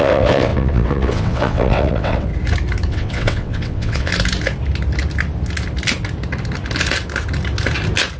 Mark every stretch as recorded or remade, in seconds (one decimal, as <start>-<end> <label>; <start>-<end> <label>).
0.0-2.3 remade; 2.3-2.9 recorded; 2.9-4.1 remade; 4.1-8.2 recorded